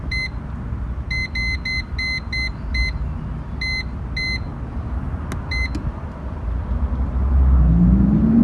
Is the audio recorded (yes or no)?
yes